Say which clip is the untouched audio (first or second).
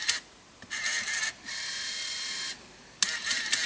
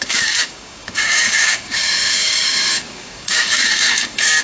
first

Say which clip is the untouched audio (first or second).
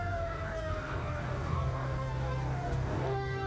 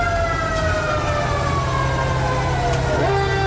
second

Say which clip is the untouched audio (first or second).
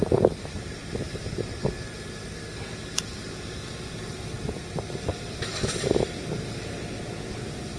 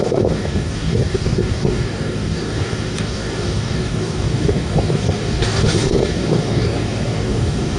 first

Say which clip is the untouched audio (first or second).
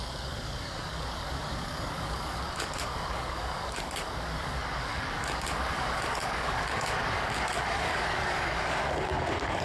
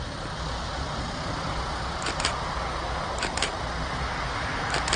second